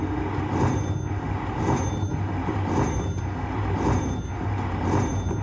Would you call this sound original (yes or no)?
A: yes